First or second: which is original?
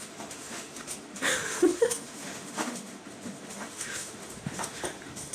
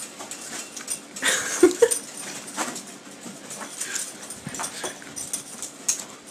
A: second